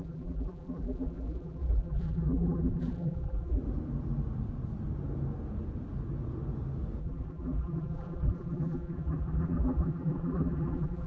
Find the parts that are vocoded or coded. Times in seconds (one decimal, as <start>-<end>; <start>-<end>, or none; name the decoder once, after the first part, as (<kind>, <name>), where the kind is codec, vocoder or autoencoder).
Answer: 0.0-3.6 (vocoder, BigVGAN v2); 7.0-11.1